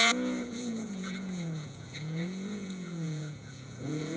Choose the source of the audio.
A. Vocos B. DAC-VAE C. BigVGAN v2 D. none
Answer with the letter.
A